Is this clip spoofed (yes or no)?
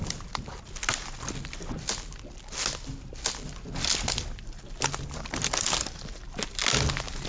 no